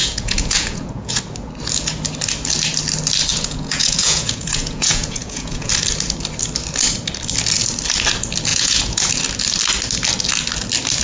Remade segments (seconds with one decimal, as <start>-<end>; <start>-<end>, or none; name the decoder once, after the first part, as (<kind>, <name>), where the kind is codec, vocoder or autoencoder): 0.0-1.2 (vocoder, Vocos); 3.3-5.7; 8.5-9.1